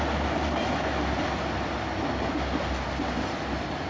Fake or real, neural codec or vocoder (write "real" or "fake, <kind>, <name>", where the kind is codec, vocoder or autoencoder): real